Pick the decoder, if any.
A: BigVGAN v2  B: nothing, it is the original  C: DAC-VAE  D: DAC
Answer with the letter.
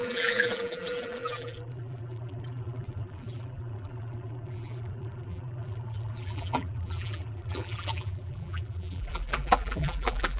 A